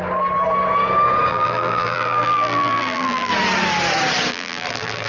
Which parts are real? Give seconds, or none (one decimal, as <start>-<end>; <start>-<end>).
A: 0.0-1.3; 3.3-4.3